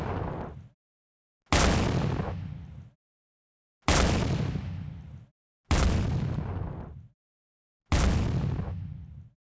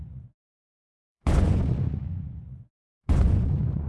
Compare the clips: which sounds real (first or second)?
first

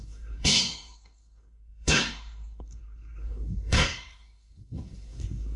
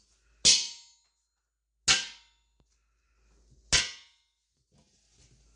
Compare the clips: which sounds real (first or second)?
second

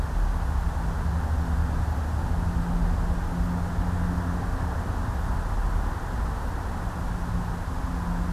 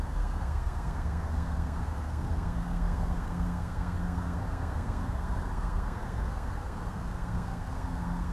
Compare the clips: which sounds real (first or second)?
first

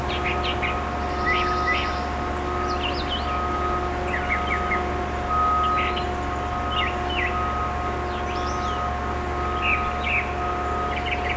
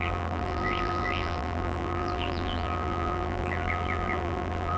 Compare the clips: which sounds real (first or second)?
first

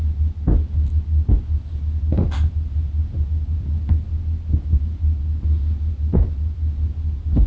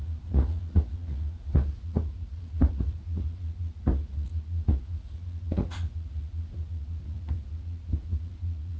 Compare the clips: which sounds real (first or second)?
first